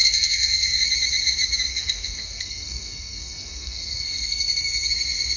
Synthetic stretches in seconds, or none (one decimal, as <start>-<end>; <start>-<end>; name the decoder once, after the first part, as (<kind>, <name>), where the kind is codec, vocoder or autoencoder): 0.0-0.8 (codec, SNAC); 1.7-4.9